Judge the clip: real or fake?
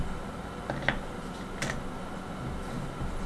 real